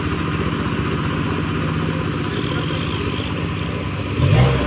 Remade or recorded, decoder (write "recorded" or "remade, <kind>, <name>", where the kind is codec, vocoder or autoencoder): recorded